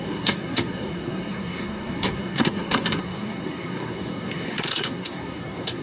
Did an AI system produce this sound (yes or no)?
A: yes